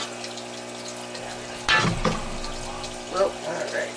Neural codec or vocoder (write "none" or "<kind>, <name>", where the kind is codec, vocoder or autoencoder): none